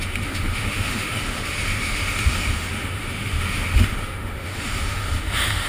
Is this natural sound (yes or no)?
no